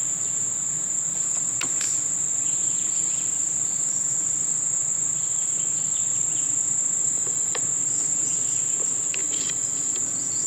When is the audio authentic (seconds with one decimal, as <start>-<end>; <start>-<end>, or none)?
0.0-7.0; 7.6-9.2; 10.0-10.5